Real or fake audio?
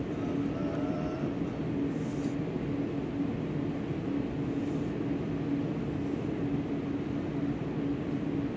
real